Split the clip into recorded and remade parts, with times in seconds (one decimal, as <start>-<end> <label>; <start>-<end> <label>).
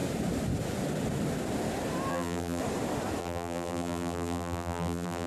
0.0-2.1 recorded; 2.1-2.6 remade; 2.6-3.2 recorded; 3.2-5.3 remade